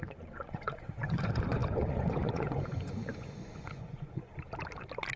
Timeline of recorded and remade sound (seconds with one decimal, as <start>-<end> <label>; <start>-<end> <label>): 0.0-4.3 remade; 4.3-5.2 recorded